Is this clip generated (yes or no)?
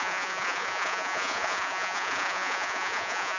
yes